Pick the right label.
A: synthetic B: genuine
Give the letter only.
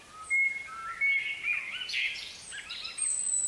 B